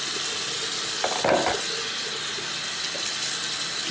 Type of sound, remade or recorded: recorded